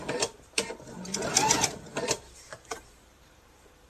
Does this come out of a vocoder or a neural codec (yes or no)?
yes